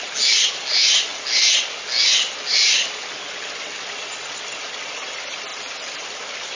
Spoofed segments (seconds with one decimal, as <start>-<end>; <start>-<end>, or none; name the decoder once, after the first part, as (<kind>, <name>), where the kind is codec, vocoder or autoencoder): 5.5-6.0 (vocoder, BigVGAN v2)